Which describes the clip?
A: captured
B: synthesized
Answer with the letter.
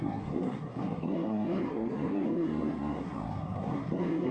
B